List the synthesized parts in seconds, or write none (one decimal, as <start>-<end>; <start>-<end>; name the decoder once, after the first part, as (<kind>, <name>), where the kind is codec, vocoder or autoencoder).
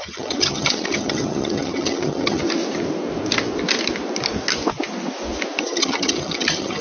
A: 0.0-2.4 (vocoder, HiFi-GAN); 5.6-6.8